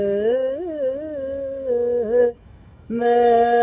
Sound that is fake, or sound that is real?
fake